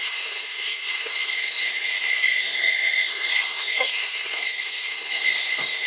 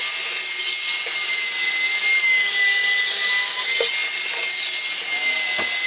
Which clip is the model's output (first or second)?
first